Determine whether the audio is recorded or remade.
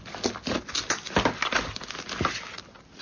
recorded